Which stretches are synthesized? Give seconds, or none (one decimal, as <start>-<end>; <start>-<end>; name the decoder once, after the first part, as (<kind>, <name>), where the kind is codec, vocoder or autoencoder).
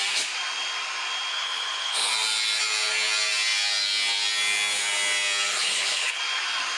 1.3-2.1 (codec, HILCodec); 5.5-6.2